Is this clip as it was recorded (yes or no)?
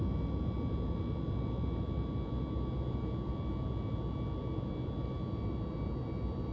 yes